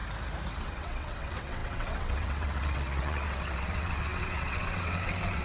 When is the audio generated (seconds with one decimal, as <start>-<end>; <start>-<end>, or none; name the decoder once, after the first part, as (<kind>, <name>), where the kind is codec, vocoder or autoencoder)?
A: 0.6-5.4 (vocoder, WaveNeXt)